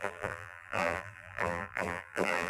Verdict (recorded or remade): remade